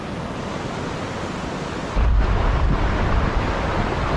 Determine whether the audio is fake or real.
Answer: real